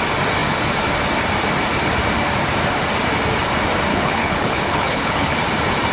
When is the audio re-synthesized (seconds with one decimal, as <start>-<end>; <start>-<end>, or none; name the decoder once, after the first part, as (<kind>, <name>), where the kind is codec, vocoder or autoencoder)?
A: 3.9-5.4 (codec, HILCodec)